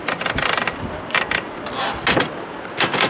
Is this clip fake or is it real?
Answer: real